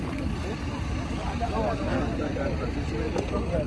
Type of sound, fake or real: real